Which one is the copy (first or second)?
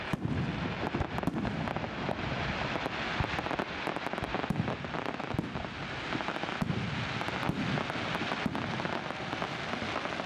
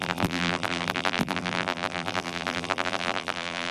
second